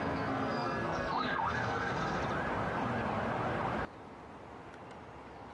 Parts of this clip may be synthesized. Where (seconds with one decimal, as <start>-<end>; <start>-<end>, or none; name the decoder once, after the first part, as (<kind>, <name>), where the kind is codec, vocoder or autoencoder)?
0.0-2.2 (codec, SNAC)